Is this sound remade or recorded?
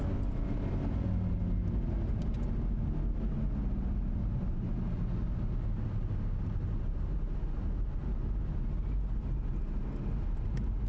recorded